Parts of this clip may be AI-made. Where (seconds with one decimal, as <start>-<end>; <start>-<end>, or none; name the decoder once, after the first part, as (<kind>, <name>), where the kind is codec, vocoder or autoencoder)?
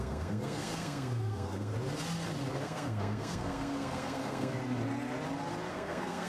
0.0-1.7 (codec, SNAC); 2.5-4.6; 5.7-6.3